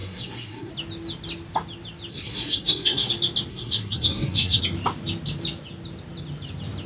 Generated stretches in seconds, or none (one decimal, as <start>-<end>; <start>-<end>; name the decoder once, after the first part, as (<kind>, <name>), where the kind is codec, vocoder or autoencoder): 0.0-0.7 (codec, SNAC); 2.1-3.1; 3.5-4.6